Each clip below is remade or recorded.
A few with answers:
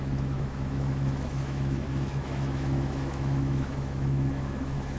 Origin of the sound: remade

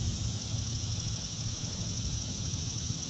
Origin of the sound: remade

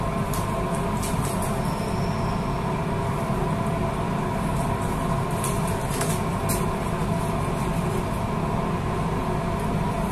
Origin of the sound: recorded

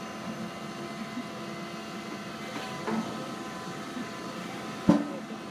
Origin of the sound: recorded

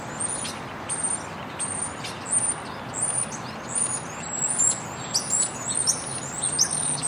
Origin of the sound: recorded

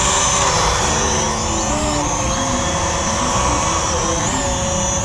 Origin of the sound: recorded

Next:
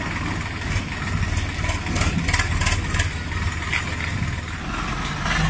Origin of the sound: recorded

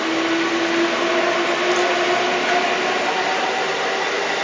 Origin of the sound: recorded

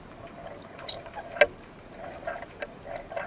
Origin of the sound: recorded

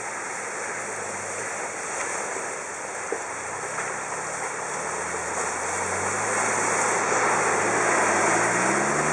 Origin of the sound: recorded